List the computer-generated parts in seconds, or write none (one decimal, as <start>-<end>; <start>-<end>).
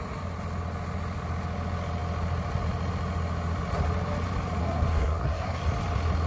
4.6-5.6